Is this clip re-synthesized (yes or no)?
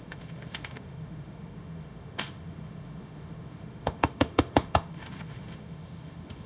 yes